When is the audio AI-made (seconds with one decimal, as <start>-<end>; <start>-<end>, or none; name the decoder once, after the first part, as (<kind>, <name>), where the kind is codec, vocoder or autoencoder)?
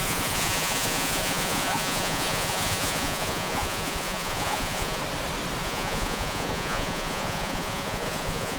0.0-5.0 (vocoder, Vocos); 5.6-8.6